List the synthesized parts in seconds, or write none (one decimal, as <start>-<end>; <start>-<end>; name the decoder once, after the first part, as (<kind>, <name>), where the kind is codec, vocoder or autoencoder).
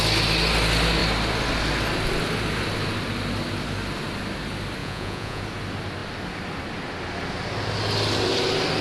4.8-5.4 (vocoder, Vocos)